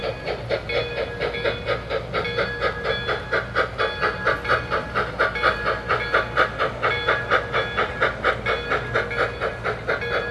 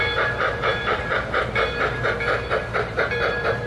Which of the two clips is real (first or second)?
first